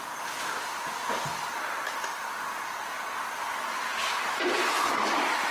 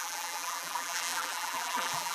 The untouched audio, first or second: first